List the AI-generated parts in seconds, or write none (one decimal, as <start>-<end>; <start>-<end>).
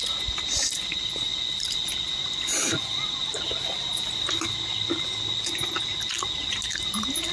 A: 1.3-3.3